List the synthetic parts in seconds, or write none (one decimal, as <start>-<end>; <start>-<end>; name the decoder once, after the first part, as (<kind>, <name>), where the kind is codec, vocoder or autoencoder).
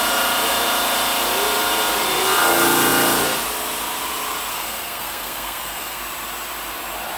4.5-6.0 (codec, SNAC)